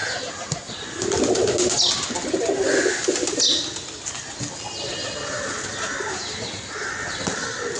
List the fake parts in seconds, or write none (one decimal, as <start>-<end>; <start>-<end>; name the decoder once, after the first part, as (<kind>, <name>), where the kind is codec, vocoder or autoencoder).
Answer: none